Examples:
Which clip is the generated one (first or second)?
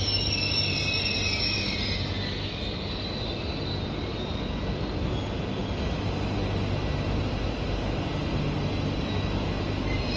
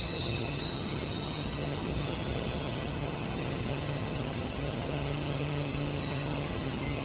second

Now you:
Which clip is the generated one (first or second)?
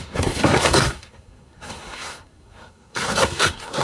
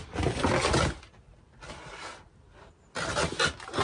first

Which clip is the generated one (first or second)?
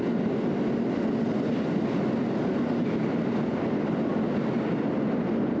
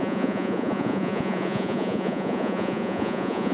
second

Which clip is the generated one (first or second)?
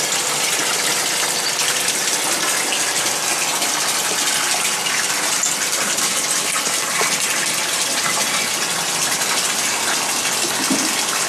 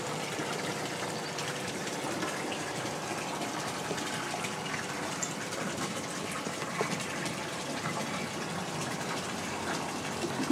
second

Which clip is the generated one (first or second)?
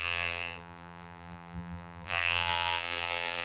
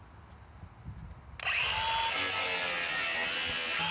first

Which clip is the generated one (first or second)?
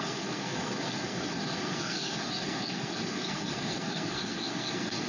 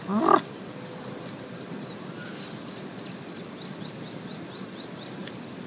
first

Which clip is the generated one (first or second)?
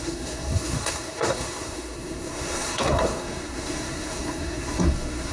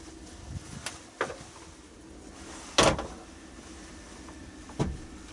first